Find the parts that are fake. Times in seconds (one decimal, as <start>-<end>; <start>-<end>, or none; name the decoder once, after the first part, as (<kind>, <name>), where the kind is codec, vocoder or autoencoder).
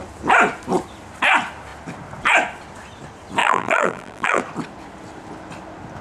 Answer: 3.4-4.4 (vocoder, BigVGAN v2)